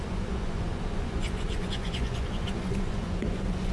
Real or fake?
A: fake